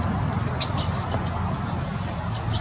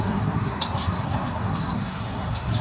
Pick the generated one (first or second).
second